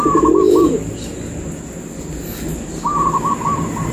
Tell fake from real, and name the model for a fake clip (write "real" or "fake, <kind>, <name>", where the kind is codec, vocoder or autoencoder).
real